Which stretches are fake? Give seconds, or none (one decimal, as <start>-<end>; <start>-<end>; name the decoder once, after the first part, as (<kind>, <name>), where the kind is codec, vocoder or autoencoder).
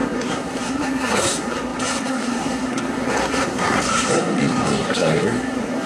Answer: 0.0-5.9 (codec, SNAC)